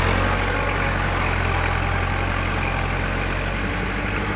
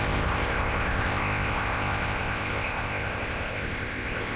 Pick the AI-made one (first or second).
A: second